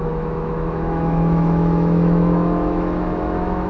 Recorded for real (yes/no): no